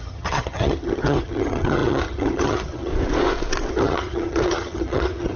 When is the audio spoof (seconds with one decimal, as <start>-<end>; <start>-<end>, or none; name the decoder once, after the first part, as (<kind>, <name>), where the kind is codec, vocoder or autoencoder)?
0.0-2.9 (vocoder, HiFi-GAN); 3.7-5.4